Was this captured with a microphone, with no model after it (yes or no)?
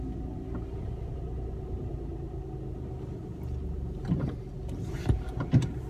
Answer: yes